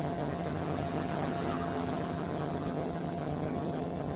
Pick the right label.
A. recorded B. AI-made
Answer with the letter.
B